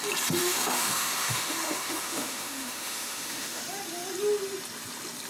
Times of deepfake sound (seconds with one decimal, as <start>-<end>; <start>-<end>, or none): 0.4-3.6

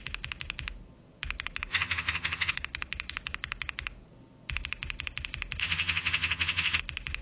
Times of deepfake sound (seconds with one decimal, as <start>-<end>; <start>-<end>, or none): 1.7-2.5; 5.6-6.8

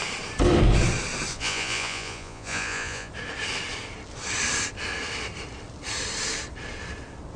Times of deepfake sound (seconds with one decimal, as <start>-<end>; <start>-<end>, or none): 1.3-3.1

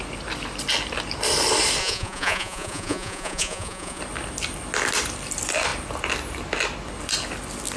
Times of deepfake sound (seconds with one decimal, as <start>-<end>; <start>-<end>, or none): 1.8-4.0

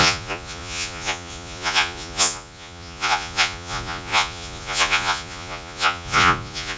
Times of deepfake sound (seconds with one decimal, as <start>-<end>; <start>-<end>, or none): 0.0-6.8